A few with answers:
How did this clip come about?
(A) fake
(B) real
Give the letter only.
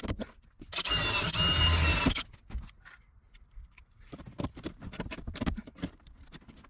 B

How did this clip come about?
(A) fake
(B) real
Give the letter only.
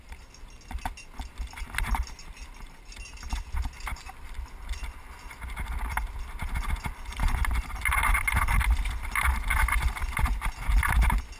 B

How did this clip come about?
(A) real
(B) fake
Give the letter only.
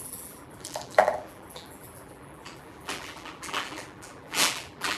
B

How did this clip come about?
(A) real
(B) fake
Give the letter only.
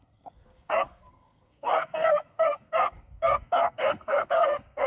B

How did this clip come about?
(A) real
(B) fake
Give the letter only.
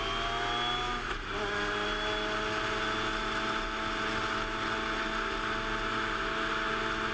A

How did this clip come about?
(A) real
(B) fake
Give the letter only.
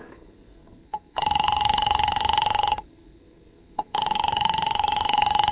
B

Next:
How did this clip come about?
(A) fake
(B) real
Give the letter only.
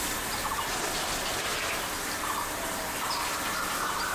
B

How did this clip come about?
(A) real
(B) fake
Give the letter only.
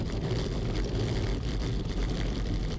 B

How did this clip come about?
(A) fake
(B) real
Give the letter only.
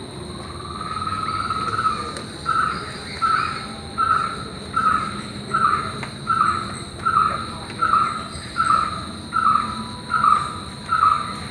B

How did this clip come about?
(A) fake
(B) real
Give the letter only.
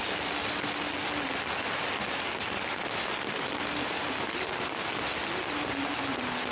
B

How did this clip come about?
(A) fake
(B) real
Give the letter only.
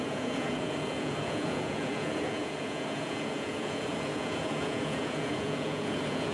A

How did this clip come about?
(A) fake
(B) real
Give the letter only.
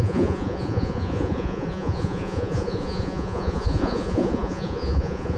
A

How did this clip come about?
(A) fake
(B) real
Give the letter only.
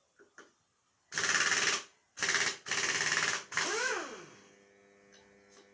B